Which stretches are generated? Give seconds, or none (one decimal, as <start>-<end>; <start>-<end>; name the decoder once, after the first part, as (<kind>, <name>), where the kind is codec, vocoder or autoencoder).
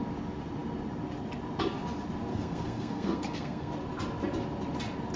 2.3-3.7 (codec, SNAC)